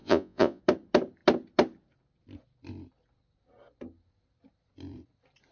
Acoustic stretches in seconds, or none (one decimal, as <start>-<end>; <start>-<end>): 0.6-5.5

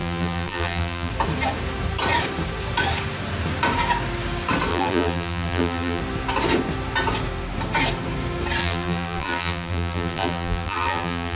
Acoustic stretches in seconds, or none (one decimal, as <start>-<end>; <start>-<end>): 1.1-4.7; 6.0-8.6

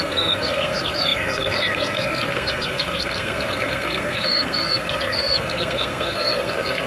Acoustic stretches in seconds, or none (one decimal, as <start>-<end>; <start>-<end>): none

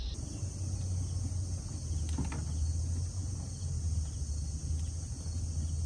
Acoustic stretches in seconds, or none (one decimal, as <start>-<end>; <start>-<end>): 0.0-5.9

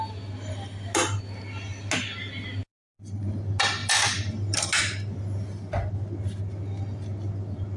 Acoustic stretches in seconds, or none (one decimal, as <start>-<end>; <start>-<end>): 0.0-3.8; 4.8-7.8

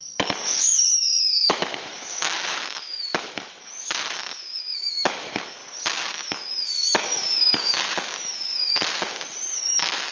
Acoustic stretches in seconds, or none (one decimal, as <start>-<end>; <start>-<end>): 5.6-6.1; 8.8-9.5

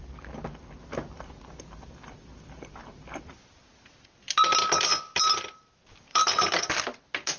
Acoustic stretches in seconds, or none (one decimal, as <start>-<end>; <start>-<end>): 2.8-5.2; 6.2-7.4

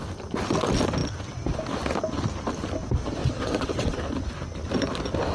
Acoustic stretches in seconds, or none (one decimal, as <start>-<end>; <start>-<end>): 0.0-3.2; 4.0-5.3